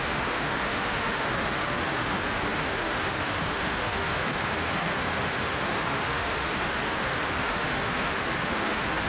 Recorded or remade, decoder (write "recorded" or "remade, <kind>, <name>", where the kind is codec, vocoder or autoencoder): remade, autoencoder, DAC-VAE